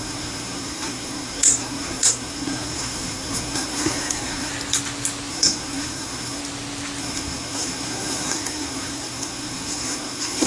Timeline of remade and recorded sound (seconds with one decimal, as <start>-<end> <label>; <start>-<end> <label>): 0.0-4.5 remade; 4.5-5.3 recorded; 5.3-6.4 remade; 6.4-7.0 recorded; 7.0-10.5 remade